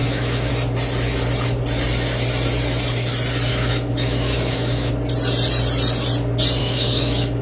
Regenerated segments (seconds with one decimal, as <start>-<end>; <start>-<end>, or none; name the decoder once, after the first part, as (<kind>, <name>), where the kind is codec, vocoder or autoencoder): 0.0-0.5 (autoencoder, DAC-VAE); 3.5-4.9; 6.6-7.4